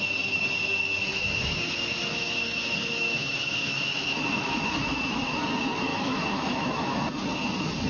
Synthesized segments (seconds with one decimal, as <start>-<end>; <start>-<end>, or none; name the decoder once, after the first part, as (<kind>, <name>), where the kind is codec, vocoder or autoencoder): 1.1-5.4 (autoencoder, DAC-VAE); 5.9-7.0